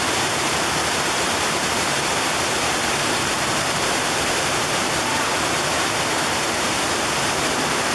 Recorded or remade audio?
remade